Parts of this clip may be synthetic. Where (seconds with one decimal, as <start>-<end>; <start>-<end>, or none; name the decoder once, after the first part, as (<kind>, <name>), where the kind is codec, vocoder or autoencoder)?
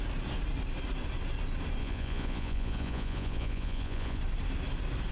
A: 1.8-4.2 (vocoder, Vocos)